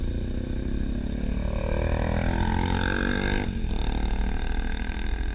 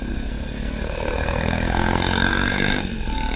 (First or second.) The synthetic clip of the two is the second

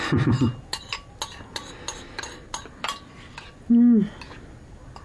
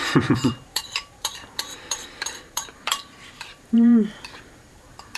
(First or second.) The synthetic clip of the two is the second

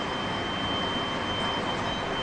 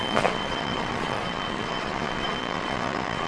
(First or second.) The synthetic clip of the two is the second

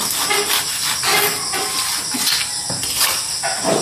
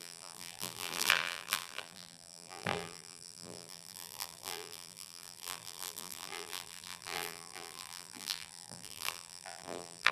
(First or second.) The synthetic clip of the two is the second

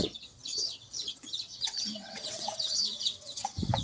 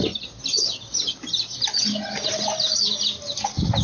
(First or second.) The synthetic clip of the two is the first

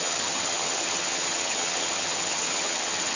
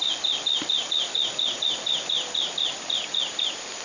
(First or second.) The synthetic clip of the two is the first